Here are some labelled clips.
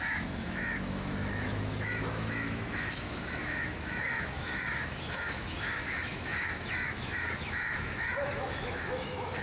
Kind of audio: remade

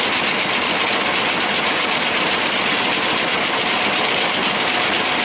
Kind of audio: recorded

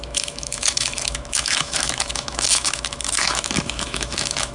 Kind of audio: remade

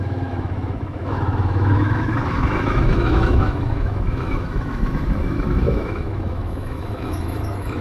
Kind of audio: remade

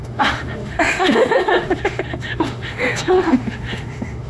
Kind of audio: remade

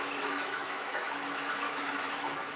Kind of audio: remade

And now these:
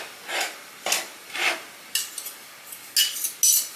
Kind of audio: recorded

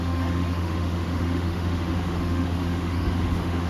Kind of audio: remade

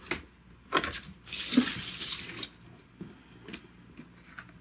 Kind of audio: recorded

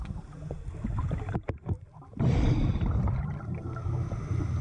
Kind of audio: recorded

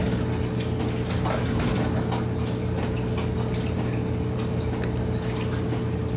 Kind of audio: recorded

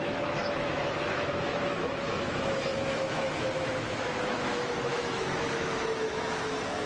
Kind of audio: remade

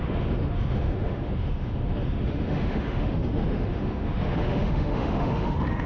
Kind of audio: remade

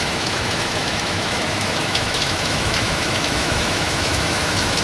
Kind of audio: remade